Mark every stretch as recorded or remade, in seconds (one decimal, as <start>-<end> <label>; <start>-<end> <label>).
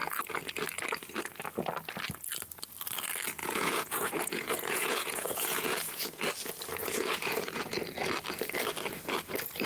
0.0-3.4 recorded; 3.4-6.2 remade; 6.2-6.8 recorded; 6.8-7.6 remade; 7.6-9.7 recorded